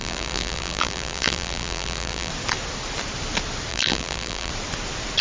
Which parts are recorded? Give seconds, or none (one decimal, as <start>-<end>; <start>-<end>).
2.3-3.7; 4.5-5.2